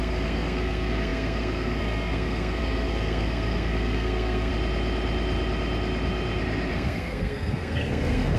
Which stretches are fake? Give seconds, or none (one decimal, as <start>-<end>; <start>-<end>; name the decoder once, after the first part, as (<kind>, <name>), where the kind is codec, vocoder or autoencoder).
0.0-4.5 (codec, SNAC); 6.7-8.4